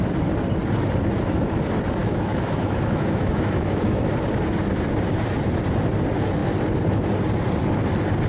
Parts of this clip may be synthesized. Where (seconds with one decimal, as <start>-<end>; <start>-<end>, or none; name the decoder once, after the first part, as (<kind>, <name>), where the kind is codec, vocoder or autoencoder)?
2.0-4.1 (autoencoder, DAC-VAE)